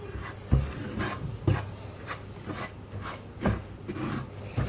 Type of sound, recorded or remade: recorded